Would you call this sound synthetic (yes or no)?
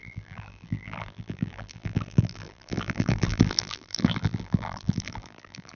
yes